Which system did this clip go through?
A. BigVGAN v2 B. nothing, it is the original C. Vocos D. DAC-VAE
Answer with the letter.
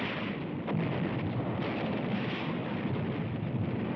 A